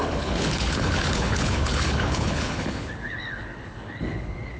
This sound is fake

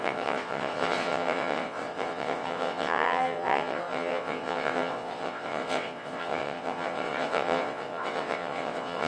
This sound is fake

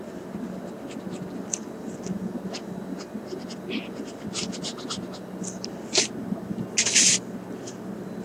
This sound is real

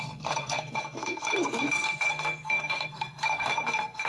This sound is fake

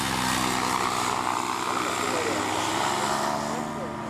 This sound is real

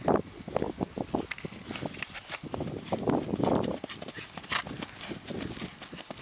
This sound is real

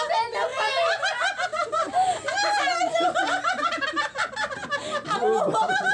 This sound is real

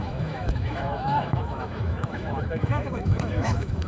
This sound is fake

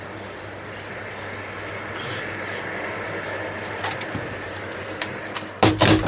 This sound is real